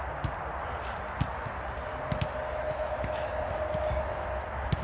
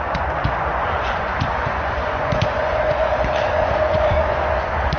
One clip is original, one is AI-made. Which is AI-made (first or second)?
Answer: second